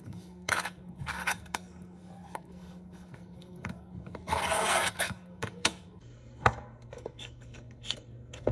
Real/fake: fake